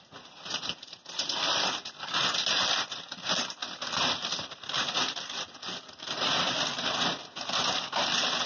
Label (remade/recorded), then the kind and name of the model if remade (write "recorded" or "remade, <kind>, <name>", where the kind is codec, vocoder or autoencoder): recorded